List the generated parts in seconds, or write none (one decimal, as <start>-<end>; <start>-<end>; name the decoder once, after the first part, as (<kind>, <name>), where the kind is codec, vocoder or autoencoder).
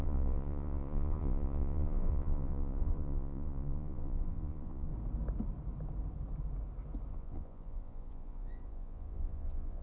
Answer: 0.0-4.9 (vocoder, Vocos); 7.1-9.8